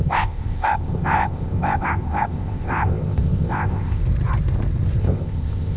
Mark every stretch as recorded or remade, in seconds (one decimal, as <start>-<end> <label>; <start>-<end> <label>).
0.0-4.0 remade; 4.0-5.0 recorded; 5.0-5.8 remade